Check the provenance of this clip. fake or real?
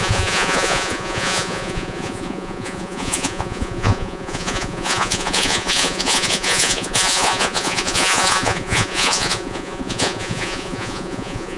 fake